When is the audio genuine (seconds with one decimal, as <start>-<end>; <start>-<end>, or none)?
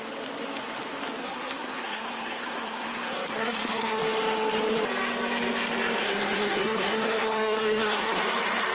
0.0-1.2; 4.0-6.0; 8.2-8.7